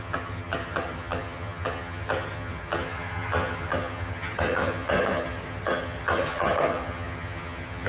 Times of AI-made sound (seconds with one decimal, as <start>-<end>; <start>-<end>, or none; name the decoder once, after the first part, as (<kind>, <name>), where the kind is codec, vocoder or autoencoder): 0.0-7.9 (vocoder, HiFi-GAN)

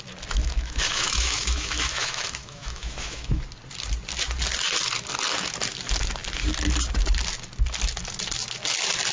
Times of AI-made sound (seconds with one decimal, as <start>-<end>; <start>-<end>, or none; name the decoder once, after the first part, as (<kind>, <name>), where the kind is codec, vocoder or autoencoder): 0.4-3.4 (autoencoder, DAC-VAE)

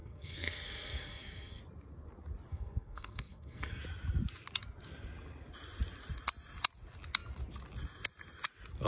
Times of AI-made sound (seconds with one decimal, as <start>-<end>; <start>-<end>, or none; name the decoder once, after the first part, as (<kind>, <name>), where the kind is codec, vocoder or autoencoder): 0.0-1.6 (codec, SNAC); 2.5-3.8

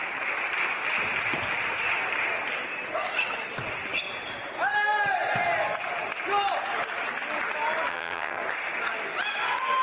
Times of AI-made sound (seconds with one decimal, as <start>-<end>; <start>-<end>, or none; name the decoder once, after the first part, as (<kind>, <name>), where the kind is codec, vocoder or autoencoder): 7.9-8.4 (vocoder, HiFi-GAN)

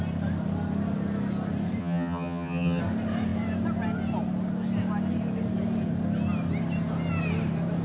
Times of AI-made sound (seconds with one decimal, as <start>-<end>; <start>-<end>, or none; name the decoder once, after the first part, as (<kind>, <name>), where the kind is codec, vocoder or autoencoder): 1.8-2.8 (vocoder, HiFi-GAN)

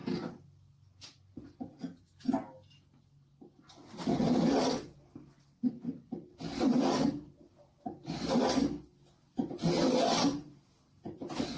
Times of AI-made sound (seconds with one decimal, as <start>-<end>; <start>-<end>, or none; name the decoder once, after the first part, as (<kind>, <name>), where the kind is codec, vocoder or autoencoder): none